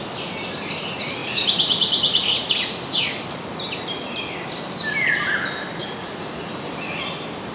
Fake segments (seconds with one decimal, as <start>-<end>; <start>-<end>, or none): 1.2-2.7; 5.8-6.4